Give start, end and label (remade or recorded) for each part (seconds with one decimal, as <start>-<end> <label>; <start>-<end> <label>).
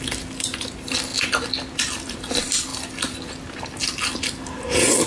0.0-5.1 recorded